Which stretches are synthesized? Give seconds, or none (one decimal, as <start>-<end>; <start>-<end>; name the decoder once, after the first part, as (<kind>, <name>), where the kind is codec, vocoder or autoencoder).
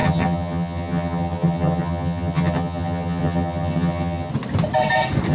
0.0-4.3 (vocoder, HiFi-GAN)